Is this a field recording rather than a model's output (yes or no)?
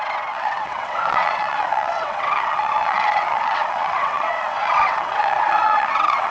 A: no